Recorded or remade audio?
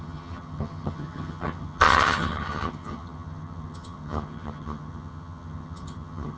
remade